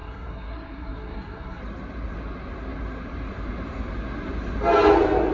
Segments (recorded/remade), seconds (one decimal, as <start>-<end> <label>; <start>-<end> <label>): 0.0-1.6 remade; 1.6-5.3 recorded